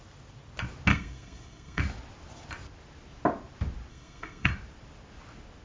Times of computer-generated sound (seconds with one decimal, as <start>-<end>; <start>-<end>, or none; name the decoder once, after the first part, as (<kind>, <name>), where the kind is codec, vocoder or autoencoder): 0.9-1.8 (codec, SNAC); 3.9-4.5